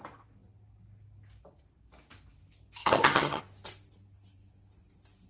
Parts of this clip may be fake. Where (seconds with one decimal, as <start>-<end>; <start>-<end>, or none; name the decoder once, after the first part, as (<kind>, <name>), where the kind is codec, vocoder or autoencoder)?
2.8-3.4 (vocoder, HiFi-GAN)